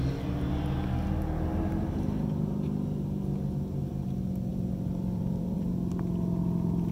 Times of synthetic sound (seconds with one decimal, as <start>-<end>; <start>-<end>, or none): 4.5-5.7